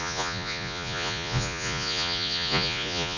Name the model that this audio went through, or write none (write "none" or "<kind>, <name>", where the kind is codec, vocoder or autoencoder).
vocoder, Vocos